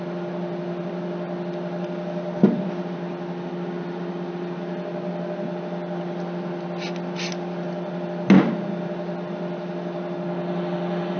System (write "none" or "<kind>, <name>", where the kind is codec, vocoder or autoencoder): none